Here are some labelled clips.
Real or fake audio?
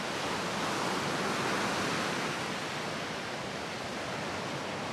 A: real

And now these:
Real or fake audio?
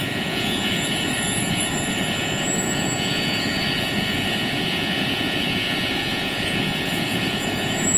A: fake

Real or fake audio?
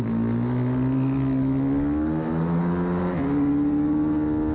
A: real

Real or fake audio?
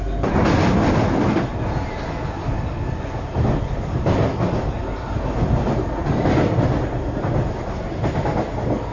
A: real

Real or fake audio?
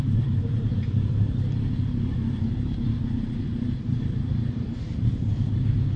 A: fake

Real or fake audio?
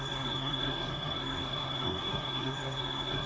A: fake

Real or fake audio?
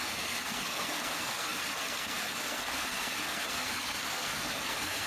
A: fake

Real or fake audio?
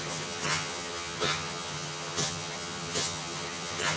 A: fake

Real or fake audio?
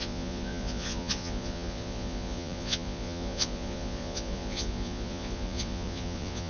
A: fake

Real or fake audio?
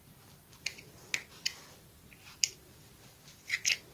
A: real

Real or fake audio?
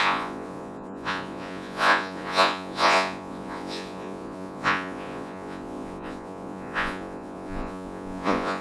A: fake